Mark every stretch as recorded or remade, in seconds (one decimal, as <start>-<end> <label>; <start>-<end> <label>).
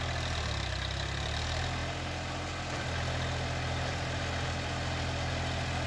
0.0-5.9 recorded